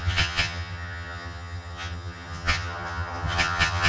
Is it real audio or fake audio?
fake